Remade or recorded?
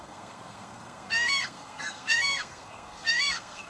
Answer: remade